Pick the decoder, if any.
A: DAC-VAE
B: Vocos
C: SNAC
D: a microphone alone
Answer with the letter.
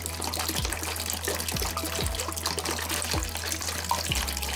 D